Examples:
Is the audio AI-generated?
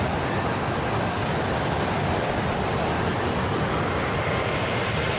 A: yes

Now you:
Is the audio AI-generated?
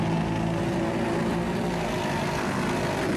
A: no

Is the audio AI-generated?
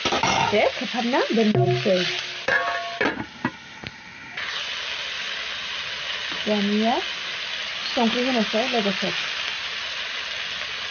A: no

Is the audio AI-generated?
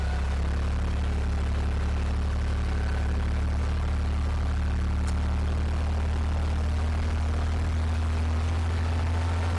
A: no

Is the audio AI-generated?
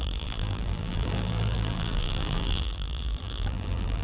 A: yes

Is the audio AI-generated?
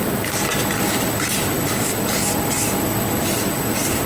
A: no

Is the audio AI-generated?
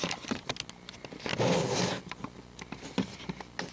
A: no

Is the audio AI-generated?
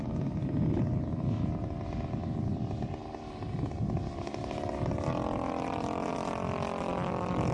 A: no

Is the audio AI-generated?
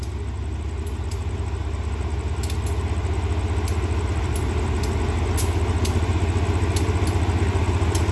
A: no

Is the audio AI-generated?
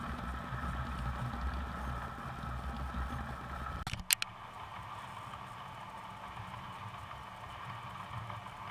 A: no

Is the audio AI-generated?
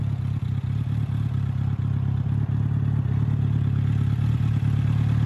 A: no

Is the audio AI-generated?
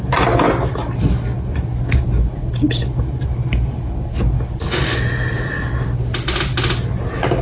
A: no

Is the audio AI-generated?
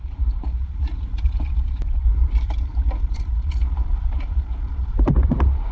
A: yes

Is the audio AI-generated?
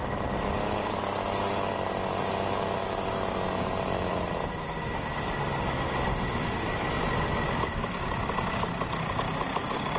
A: no